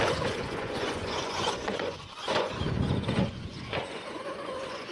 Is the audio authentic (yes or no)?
no